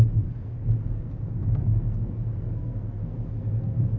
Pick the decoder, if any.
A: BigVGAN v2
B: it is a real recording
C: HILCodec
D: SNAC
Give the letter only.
D